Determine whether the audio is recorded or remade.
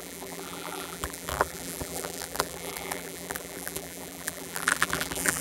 remade